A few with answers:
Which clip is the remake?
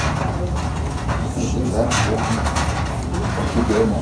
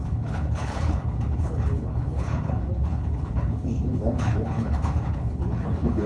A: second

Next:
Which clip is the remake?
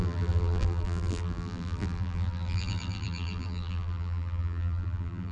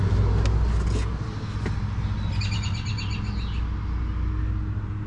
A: first